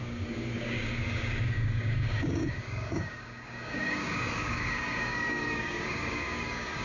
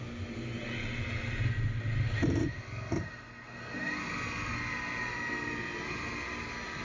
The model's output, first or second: first